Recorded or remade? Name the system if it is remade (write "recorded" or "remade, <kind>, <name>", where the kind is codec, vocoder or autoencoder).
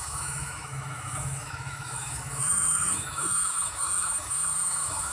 remade, autoencoder, DAC-VAE